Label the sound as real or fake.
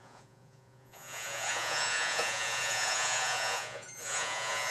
fake